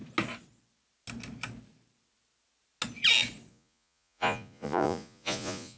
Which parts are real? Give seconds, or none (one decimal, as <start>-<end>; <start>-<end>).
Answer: 0.0-3.5